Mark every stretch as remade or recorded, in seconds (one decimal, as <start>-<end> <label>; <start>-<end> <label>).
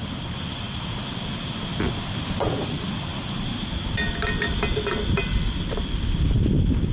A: 0.0-6.9 recorded